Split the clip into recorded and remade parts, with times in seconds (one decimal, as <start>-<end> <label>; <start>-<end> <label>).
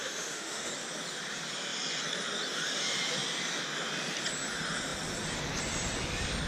0.0-0.7 remade; 0.7-6.5 recorded